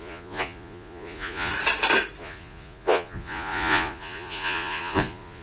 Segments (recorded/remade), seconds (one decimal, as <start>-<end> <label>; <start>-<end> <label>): 0.0-1.5 remade; 1.5-2.2 recorded; 2.2-5.4 remade